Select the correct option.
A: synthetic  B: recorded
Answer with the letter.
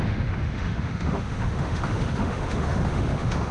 A